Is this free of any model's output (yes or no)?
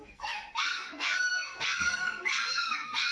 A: no